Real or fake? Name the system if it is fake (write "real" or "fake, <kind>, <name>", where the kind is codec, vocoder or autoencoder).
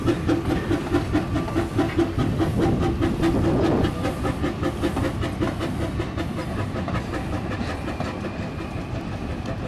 real